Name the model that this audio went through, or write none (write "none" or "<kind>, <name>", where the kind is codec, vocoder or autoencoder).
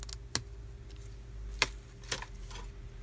none